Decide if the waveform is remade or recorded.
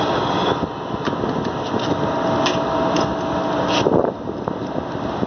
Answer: recorded